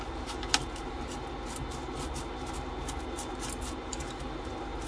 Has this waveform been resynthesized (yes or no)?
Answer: no